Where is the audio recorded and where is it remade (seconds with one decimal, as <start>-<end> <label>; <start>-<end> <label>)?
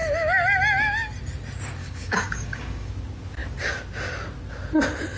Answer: 0.0-1.8 recorded; 1.8-2.9 remade; 2.9-5.2 recorded